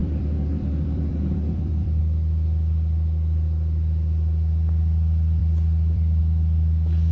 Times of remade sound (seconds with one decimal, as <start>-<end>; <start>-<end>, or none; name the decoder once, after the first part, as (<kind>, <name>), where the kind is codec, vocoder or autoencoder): 0.0-2.0 (vocoder, BigVGAN v2); 5.4-6.2